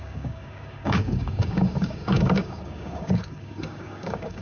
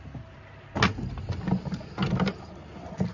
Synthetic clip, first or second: first